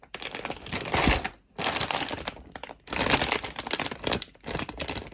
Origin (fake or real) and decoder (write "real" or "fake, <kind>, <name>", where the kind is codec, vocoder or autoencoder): real